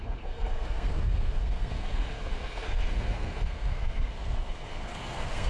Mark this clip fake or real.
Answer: fake